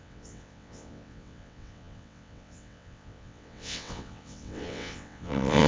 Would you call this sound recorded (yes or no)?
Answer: no